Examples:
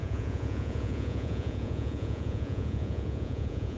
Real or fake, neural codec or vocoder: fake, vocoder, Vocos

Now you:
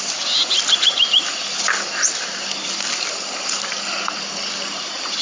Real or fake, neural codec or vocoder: real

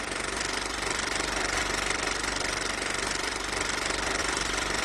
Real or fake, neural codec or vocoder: fake, vocoder, BigVGAN v2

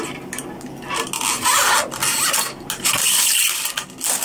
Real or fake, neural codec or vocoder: real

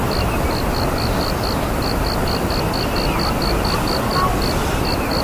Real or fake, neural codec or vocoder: real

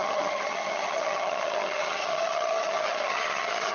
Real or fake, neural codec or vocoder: fake, vocoder, HiFi-GAN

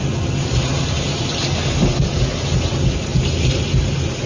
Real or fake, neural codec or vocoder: real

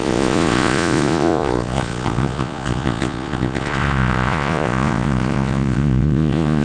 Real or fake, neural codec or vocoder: fake, vocoder, Vocos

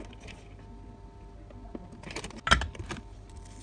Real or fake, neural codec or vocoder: real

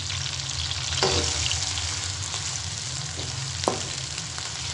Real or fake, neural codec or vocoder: real